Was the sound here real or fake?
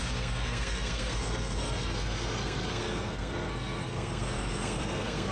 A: fake